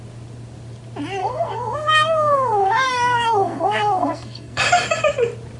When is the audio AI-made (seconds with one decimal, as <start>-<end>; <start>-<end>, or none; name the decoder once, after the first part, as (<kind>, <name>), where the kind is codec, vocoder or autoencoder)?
1.2-4.6 (codec, SNAC)